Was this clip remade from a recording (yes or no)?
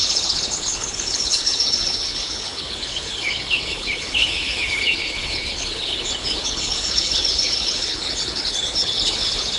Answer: yes